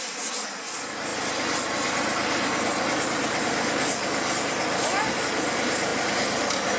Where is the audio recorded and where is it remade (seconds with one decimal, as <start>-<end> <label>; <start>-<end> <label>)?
0.0-6.8 recorded